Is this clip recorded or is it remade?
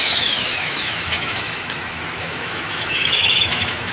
remade